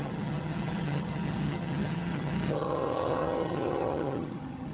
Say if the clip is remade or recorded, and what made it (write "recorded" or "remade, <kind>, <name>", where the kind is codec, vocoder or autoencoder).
remade, vocoder, HiFi-GAN